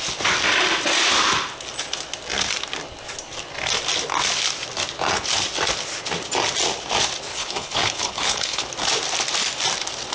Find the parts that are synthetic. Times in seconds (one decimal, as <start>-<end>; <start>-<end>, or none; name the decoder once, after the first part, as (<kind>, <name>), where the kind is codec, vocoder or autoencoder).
7.3-8.6 (codec, HILCodec)